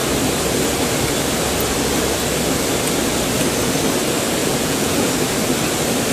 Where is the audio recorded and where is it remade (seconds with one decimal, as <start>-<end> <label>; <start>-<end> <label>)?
0.0-4.4 recorded; 4.4-5.1 remade; 5.1-6.1 recorded